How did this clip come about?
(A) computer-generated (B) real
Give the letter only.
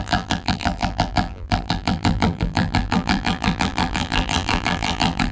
A